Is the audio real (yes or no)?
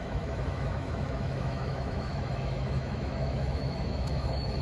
no